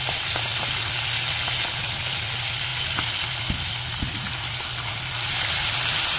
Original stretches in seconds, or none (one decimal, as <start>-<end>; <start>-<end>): 0.0-6.2